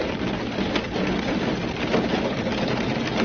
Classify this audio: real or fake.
real